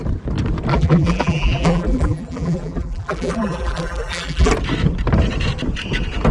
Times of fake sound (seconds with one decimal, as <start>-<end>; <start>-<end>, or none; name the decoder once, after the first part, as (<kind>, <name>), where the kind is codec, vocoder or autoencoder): 0.7-4.5 (vocoder, BigVGAN v2)